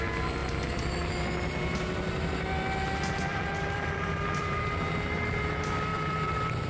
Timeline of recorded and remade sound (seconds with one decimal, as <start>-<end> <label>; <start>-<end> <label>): 0.0-0.4 recorded; 0.4-1.1 remade; 1.1-3.3 recorded; 3.3-4.9 remade; 4.9-5.9 recorded; 5.9-6.7 remade